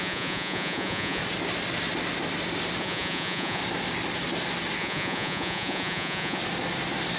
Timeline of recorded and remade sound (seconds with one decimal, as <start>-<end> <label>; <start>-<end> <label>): 0.0-1.2 remade; 1.2-2.8 recorded; 2.8-3.6 remade; 3.6-4.8 recorded; 4.8-6.4 remade; 6.4-7.2 recorded